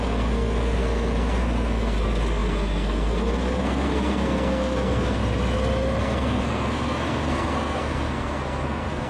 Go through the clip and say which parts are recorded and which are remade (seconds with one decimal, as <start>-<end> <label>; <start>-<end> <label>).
0.0-5.2 remade; 5.2-6.0 recorded; 6.0-9.1 remade